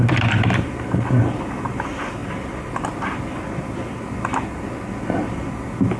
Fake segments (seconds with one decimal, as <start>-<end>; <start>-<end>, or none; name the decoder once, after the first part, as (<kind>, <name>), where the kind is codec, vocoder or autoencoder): none